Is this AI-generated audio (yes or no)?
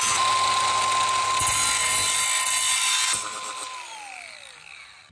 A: no